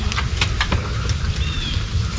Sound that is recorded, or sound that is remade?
recorded